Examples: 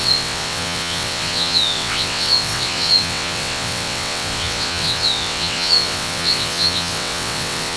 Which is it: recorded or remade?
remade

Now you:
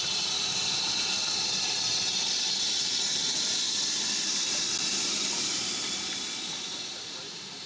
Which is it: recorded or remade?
recorded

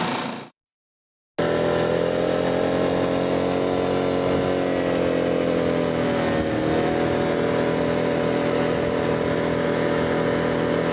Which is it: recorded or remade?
recorded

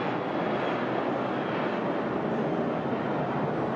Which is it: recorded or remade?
recorded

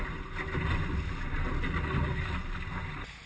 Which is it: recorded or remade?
recorded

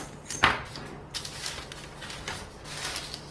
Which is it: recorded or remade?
recorded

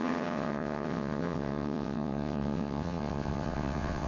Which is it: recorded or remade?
remade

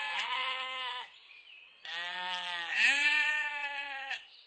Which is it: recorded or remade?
remade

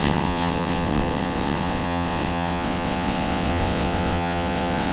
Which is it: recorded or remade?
remade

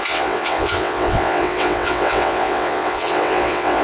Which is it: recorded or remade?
remade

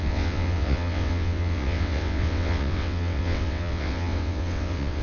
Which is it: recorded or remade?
remade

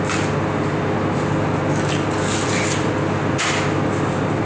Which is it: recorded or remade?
recorded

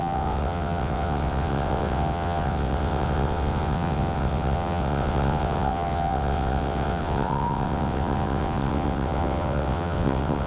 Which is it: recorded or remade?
remade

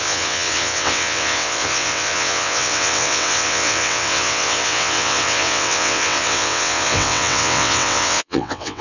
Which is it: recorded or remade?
remade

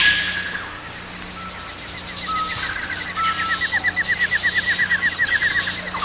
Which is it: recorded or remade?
recorded